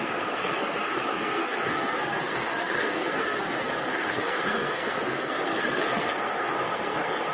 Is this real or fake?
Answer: fake